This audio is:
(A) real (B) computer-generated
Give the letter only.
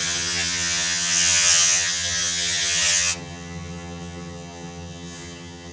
B